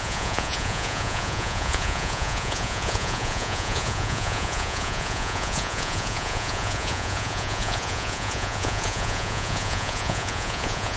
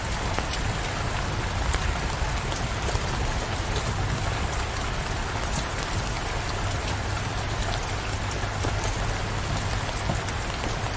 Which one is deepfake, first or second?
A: first